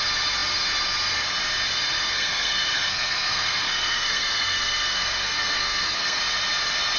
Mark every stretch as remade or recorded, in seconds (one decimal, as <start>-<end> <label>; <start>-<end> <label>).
0.0-2.0 recorded; 2.0-6.2 remade; 6.2-7.0 recorded